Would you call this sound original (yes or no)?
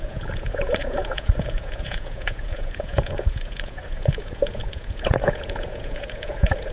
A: no